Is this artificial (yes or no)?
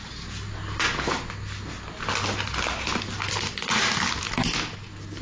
no